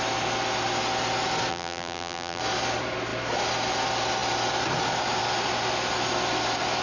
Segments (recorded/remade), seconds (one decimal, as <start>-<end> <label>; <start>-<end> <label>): 0.0-1.5 recorded; 1.5-2.4 remade; 2.4-6.8 recorded